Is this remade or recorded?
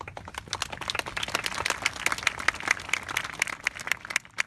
recorded